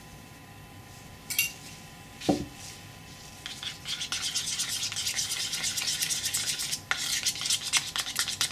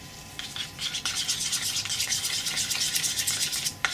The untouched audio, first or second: first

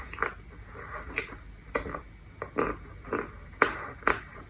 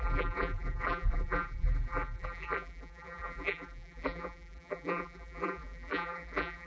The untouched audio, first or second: first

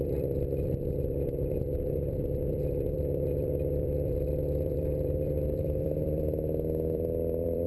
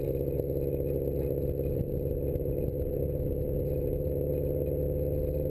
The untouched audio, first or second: second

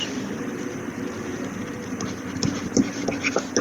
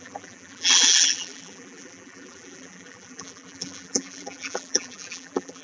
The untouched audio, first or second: first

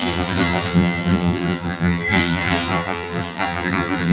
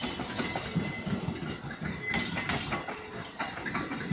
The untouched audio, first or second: second